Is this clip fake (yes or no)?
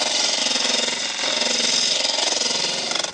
no